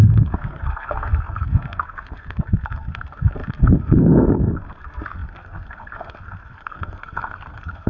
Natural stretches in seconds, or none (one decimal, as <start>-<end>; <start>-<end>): none